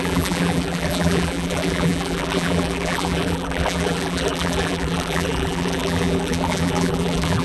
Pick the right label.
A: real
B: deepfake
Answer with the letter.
B